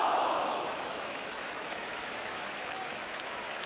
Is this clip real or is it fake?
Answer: fake